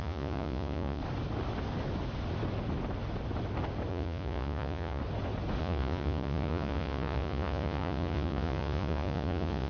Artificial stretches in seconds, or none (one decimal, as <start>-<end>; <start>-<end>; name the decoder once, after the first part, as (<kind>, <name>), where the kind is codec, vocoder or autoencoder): 0.0-1.0 (vocoder, Vocos); 3.9-5.0; 5.6-9.7